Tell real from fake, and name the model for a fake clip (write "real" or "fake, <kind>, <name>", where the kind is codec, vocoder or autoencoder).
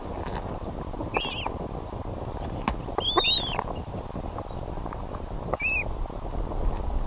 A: real